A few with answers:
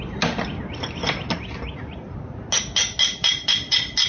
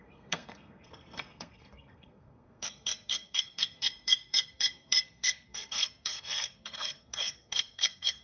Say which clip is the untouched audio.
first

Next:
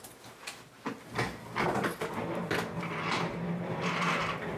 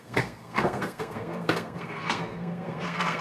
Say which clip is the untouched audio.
first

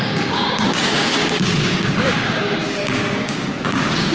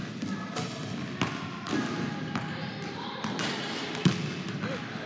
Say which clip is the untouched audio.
second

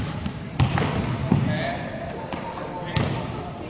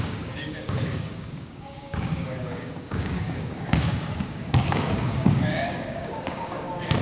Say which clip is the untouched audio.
first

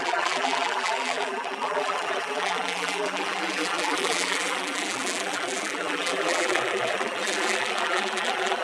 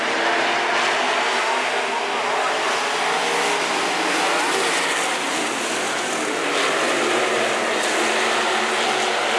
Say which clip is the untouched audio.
second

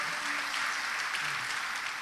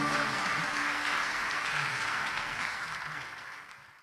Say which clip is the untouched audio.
first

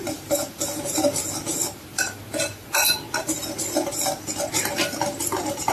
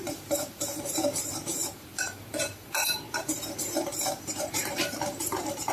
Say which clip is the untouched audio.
first